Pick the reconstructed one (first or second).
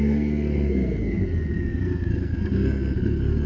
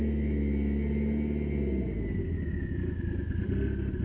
first